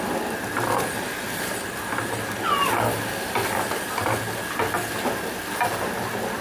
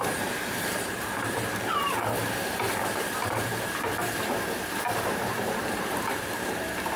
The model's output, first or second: second